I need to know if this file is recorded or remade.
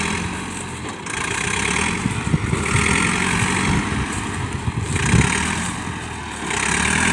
recorded